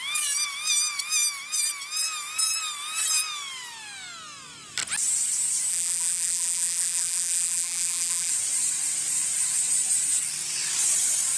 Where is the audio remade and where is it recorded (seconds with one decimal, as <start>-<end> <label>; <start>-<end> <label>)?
0.0-5.7 recorded; 5.7-8.3 remade; 8.3-11.4 recorded